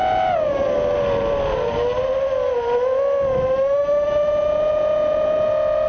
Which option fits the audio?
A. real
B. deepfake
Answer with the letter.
A